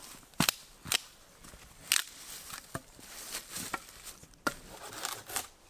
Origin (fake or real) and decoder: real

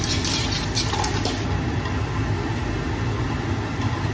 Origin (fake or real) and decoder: real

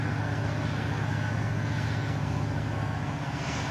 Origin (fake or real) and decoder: fake, codec, SNAC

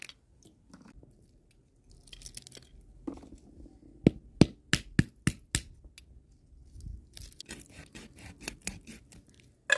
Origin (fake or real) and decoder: real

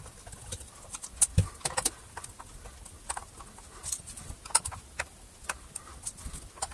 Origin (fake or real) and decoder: real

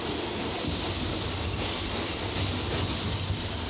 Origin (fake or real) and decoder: real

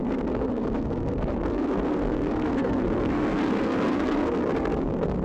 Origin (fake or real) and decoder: fake, codec, SNAC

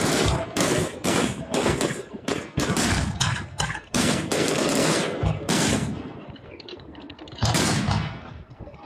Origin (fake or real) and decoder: fake, codec, SNAC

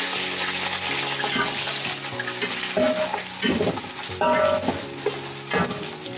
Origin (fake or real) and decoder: real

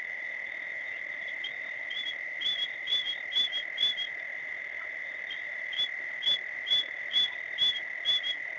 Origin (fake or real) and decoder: real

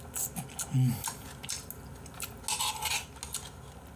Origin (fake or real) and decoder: real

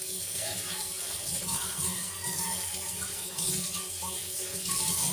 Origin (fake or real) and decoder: fake, codec, SNAC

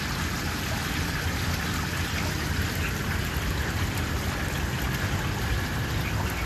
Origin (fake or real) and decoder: real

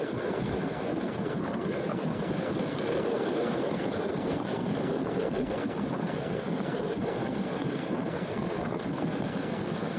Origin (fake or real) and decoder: fake, codec, SNAC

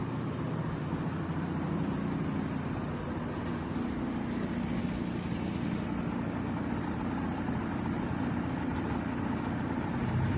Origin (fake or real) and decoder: real